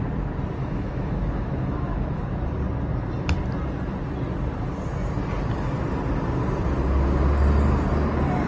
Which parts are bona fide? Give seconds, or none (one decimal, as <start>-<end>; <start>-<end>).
0.0-0.6; 2.2-8.5